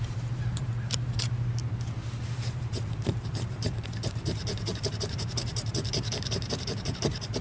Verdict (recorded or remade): remade